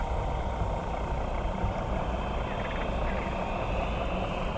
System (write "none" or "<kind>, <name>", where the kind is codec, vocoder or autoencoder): none